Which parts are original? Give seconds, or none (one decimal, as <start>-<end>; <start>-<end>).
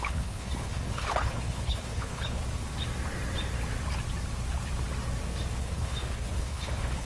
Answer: 2.4-5.6